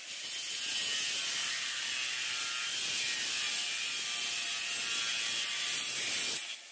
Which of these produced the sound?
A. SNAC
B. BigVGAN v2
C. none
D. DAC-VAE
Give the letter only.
C